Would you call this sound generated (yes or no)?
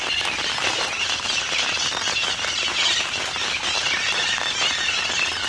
yes